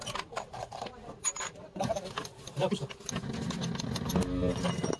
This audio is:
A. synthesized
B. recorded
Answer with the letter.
B